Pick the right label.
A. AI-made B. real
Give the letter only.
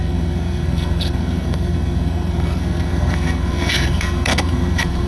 A